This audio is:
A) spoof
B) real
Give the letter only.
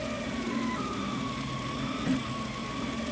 B